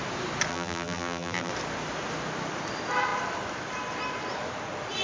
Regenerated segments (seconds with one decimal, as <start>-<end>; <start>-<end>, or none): 0.5-1.5